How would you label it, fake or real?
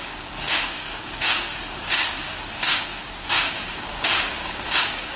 fake